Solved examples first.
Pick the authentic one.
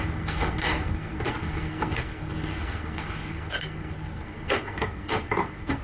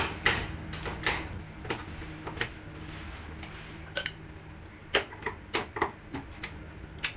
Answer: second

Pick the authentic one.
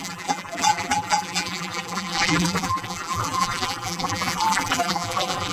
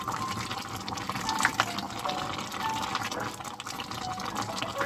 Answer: second